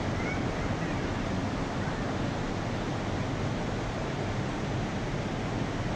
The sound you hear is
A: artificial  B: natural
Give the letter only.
B